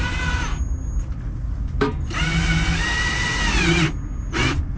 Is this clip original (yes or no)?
yes